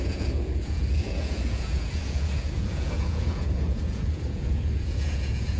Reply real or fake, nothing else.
fake